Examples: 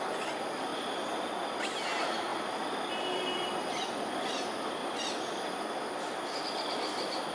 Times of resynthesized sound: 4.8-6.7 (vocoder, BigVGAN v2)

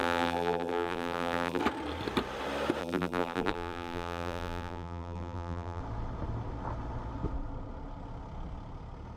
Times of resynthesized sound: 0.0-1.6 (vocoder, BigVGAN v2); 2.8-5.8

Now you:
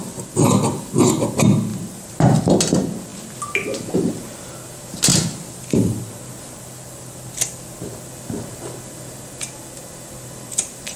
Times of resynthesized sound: 1.7-2.4 (vocoder, BigVGAN v2); 5.1-6.0

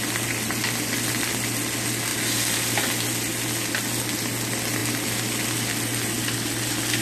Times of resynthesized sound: none